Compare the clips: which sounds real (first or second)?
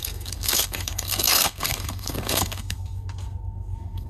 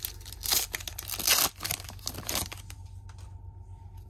second